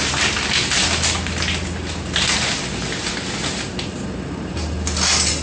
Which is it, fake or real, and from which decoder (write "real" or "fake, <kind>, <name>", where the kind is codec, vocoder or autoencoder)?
real